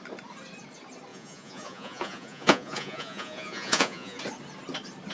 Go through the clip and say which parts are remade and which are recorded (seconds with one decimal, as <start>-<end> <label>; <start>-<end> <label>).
0.0-1.1 recorded; 1.1-4.2 remade; 4.2-5.1 recorded